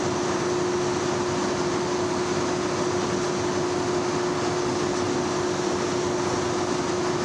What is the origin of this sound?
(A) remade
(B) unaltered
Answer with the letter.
B